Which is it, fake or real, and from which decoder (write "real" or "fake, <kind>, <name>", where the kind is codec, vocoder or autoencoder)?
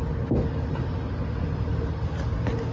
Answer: real